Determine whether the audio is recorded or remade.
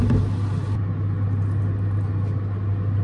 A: recorded